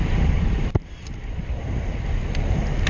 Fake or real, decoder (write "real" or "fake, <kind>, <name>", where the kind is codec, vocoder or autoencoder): real